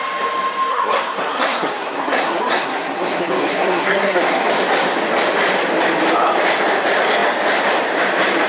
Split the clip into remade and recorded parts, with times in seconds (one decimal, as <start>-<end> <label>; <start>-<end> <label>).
0.0-0.7 recorded; 0.7-4.5 remade; 4.5-8.5 recorded